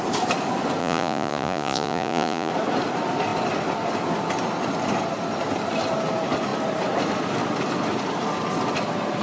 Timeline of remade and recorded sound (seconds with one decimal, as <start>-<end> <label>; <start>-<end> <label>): 0.0-0.8 recorded; 0.8-2.5 remade; 2.5-9.2 recorded